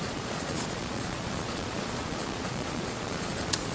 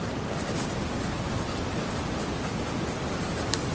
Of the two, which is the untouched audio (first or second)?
second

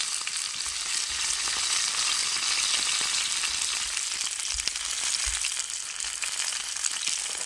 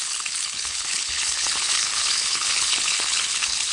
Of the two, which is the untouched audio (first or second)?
first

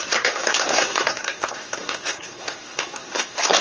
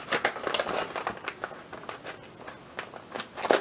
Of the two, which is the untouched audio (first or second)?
second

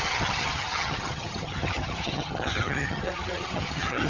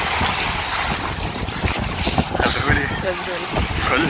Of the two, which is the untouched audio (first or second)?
second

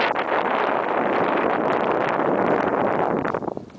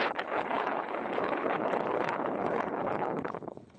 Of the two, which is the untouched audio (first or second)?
first